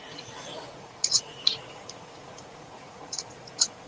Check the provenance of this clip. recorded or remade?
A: remade